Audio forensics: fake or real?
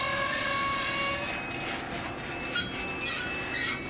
real